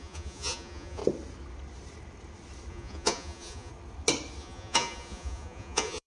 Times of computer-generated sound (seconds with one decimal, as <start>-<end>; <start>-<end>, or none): 0.0-1.0; 2.7-3.7; 4.4-6.1